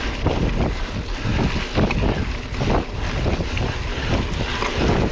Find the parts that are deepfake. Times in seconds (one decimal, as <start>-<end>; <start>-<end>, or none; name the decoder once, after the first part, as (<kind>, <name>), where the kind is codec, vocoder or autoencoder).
none